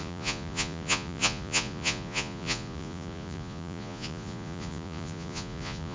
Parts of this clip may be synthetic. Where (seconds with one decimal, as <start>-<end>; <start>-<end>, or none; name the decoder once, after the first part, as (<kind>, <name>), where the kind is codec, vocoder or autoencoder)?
0.0-5.9 (vocoder, Vocos)